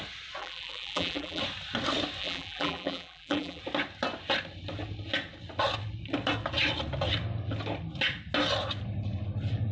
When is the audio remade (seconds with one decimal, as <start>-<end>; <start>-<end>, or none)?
0.4-1.4; 2.2-3.6